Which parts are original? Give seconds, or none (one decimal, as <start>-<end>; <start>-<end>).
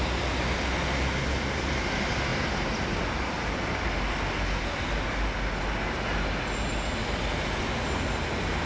0.0-8.7